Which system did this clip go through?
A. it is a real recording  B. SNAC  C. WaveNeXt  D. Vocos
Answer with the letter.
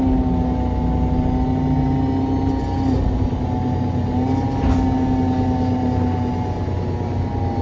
A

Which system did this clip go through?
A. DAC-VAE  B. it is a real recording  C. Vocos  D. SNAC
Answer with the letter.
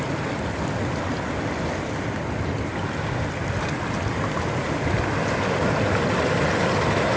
B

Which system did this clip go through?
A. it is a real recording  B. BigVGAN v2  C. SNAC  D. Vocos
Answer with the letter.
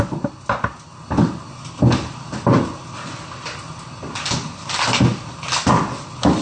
A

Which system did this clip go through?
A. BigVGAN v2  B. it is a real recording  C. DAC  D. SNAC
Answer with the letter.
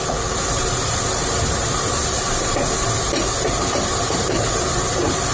B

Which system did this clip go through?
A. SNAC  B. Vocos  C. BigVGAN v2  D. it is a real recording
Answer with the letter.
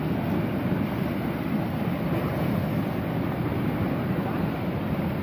D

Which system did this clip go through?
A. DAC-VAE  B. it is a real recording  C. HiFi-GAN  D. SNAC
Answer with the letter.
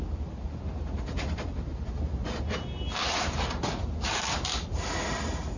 B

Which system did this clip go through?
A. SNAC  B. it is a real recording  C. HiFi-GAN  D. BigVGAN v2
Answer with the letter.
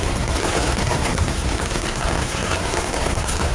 A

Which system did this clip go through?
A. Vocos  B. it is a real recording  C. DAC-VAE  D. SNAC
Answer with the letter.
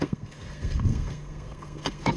D